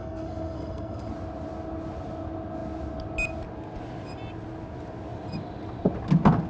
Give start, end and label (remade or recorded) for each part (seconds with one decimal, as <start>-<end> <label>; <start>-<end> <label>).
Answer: 0.0-1.1 remade; 1.1-6.5 recorded